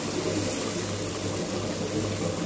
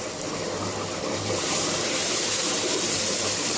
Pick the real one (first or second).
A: first